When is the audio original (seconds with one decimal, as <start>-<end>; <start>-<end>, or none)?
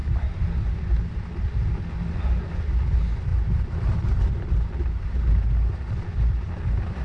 0.0-7.0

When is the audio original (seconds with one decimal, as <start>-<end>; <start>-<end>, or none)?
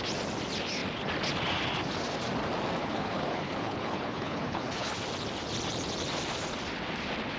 0.0-2.8; 4.9-7.4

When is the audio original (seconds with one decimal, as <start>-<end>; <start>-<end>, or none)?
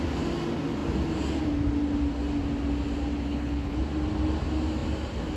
0.0-3.3; 3.8-5.4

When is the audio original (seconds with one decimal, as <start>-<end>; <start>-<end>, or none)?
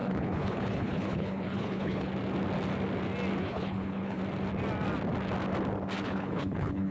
2.1-3.4; 4.2-6.0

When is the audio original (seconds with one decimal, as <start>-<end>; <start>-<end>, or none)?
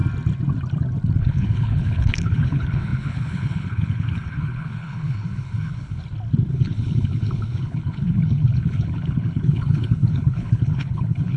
0.0-1.2; 6.0-6.5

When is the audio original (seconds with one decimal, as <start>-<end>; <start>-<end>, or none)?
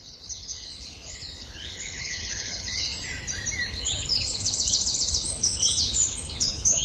2.9-3.7